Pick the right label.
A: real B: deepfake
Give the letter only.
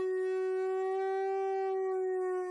A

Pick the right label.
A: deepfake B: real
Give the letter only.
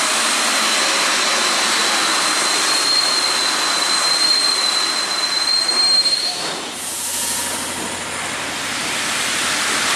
B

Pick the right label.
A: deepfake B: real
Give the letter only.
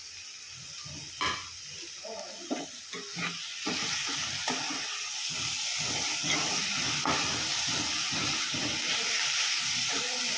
B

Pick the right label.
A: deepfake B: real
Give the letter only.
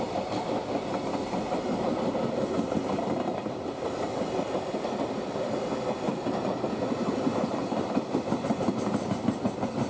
B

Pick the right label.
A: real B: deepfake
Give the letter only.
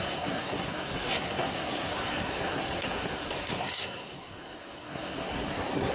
B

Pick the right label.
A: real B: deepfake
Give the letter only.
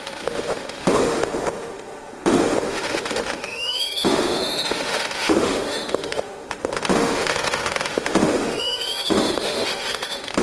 B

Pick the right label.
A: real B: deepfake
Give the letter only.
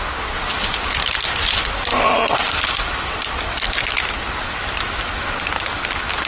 A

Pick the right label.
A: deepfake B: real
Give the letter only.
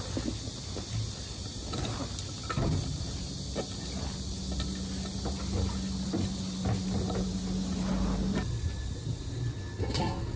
B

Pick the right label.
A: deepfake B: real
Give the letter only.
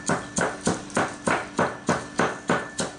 B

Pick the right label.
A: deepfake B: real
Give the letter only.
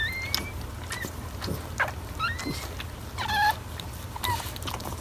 B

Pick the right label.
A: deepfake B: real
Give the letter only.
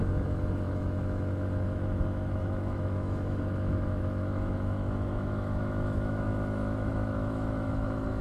A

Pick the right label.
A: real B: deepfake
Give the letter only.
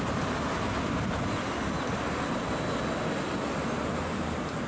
A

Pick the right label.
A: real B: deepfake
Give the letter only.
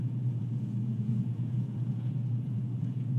B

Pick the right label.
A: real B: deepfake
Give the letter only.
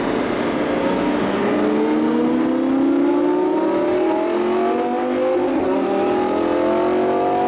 A